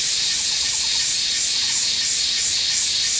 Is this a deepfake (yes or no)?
no